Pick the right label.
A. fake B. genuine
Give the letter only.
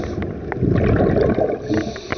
B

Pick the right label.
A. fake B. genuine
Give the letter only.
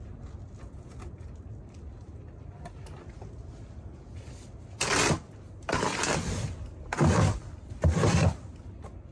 B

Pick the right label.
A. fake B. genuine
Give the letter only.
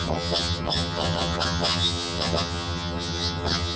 A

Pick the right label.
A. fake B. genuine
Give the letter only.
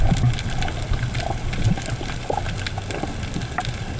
B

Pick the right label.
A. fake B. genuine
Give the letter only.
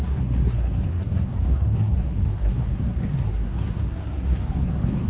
A